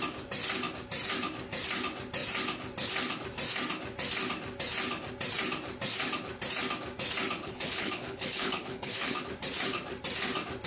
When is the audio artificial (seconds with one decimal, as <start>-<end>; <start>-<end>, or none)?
7.4-9.2